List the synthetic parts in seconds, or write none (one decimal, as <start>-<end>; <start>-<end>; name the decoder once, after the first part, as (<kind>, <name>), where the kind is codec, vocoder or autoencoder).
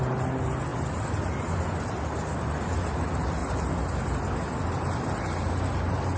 none